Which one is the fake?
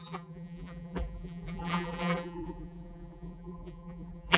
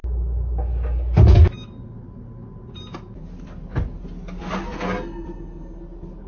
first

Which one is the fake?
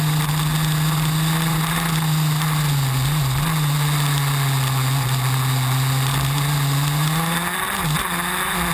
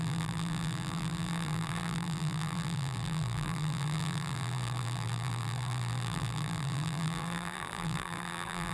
second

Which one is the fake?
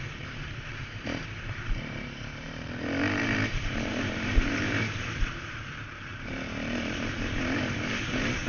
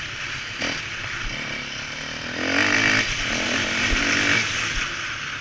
first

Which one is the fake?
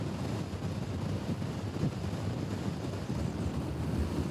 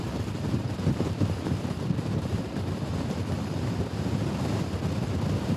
second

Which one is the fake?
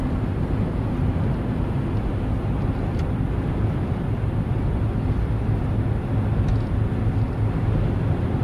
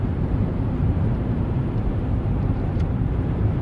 second